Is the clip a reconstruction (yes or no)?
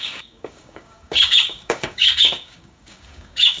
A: yes